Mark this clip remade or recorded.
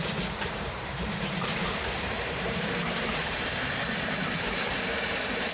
remade